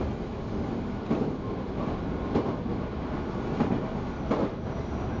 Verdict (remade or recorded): recorded